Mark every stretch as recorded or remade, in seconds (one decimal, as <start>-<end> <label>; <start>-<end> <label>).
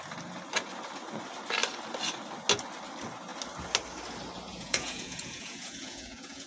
0.0-4.5 recorded; 4.5-6.5 remade